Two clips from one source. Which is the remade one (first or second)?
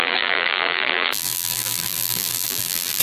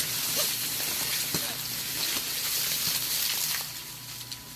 first